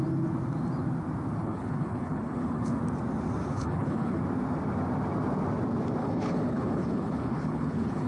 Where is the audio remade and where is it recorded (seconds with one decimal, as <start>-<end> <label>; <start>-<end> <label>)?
0.0-1.4 recorded; 1.4-2.8 remade; 2.8-3.4 recorded; 3.4-4.2 remade; 4.2-6.0 recorded; 6.0-8.1 remade